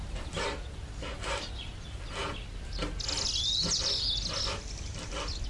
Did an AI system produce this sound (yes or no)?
no